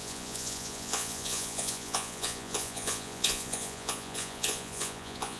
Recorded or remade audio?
remade